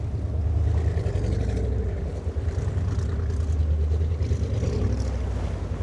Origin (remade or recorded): recorded